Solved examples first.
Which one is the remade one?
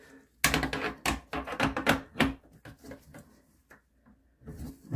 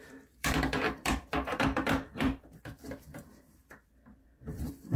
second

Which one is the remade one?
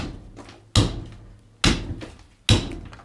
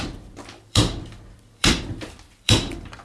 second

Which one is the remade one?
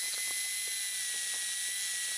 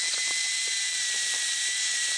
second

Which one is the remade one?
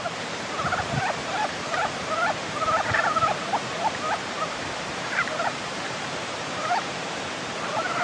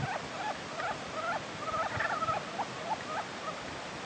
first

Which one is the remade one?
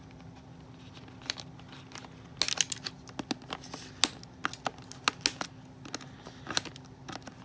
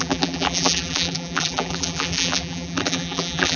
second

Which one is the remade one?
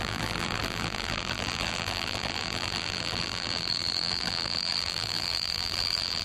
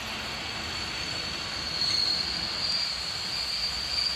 first